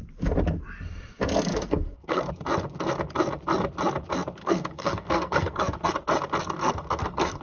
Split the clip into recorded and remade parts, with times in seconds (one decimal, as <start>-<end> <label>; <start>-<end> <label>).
0.0-1.5 recorded; 1.5-2.3 remade; 2.3-4.4 recorded; 4.4-5.9 remade; 5.9-6.6 recorded; 6.6-7.4 remade